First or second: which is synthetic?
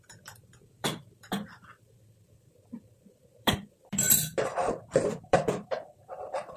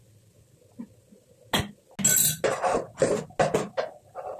first